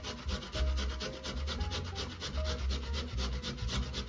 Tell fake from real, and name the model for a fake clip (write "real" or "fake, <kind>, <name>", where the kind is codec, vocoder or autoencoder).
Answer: real